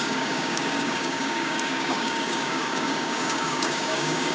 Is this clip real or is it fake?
fake